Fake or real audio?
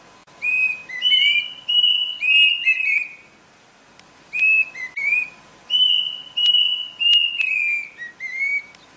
real